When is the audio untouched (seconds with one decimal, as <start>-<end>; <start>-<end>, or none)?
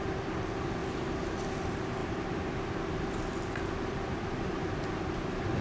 0.8-1.5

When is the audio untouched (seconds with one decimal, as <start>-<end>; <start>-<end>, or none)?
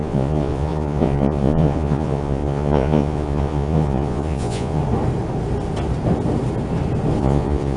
4.8-7.2